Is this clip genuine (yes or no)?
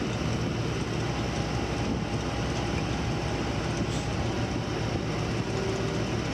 yes